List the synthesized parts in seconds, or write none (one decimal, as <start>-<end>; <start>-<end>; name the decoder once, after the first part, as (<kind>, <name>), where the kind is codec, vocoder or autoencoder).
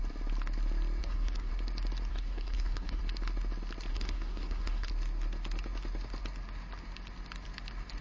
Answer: 1.0-1.5 (codec, SNAC); 2.1-3.0; 3.9-4.9